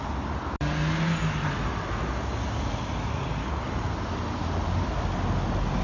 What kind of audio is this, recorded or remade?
recorded